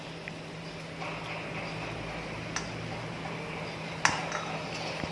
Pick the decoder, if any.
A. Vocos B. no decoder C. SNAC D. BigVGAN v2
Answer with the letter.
B